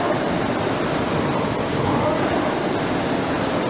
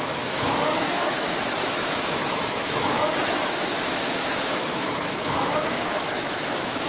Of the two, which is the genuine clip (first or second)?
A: first